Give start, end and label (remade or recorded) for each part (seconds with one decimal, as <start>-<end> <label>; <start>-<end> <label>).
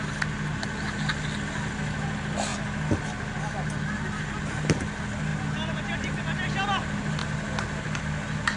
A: 0.0-8.6 recorded